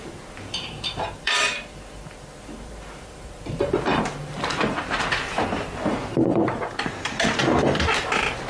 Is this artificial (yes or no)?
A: yes